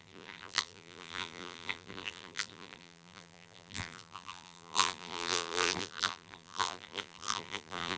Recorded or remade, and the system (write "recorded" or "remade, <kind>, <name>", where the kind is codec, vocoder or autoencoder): remade, vocoder, BigVGAN v2